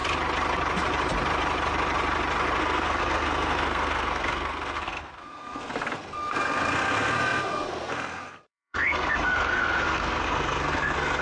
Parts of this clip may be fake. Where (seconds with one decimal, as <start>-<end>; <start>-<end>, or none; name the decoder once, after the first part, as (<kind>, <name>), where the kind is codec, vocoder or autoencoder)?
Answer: 2.6-11.2 (codec, SNAC)